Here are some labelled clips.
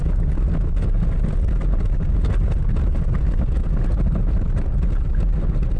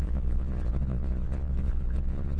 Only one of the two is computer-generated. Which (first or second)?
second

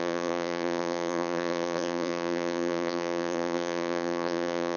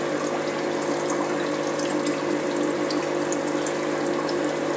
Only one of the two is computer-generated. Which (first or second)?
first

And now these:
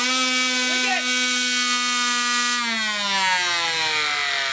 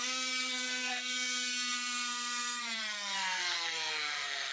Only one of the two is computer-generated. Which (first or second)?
second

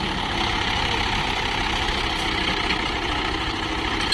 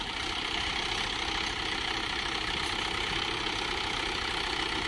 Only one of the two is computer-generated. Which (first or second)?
second